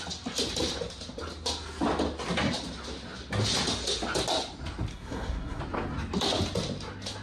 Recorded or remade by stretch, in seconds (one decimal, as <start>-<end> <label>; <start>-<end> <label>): 0.0-4.9 recorded; 4.9-5.6 remade; 5.6-7.2 recorded

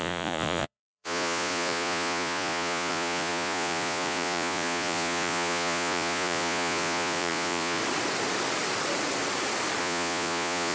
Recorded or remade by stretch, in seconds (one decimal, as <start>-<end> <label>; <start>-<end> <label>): 0.0-7.8 remade; 7.8-9.8 recorded; 9.8-10.7 remade

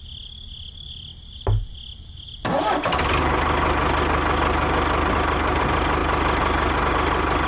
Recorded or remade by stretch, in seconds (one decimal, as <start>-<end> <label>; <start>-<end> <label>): 0.0-7.5 recorded

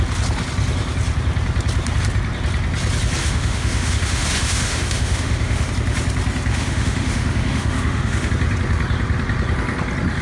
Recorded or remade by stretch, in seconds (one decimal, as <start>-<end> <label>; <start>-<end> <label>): 0.0-3.2 recorded; 3.2-5.7 remade; 5.7-6.5 recorded; 6.5-8.3 remade; 8.3-10.2 recorded

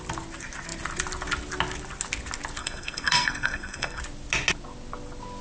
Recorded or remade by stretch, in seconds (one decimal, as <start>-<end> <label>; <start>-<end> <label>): 0.0-2.6 recorded; 2.6-4.0 remade; 4.0-5.4 recorded

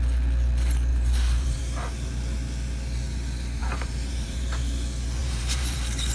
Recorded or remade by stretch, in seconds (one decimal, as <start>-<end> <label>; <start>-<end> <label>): 0.0-0.9 recorded; 0.9-1.6 remade; 1.6-3.6 recorded; 3.6-4.6 remade; 4.6-5.2 recorded; 5.2-6.1 remade